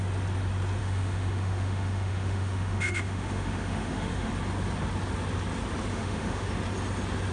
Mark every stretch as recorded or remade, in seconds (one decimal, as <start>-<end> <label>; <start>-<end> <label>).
0.0-0.8 recorded; 0.8-4.3 remade; 4.3-5.9 recorded; 5.9-6.5 remade; 6.5-7.3 recorded